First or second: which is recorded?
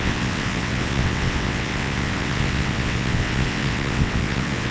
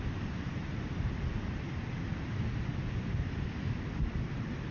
second